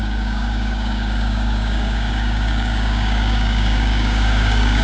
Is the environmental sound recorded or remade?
remade